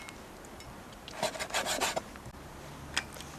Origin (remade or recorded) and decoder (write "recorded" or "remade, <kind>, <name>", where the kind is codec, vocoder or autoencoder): recorded